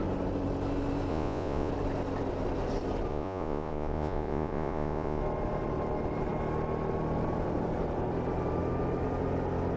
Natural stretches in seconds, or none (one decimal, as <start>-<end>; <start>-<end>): 0.0-1.1; 1.7-3.1; 5.2-9.8